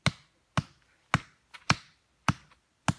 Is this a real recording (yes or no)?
yes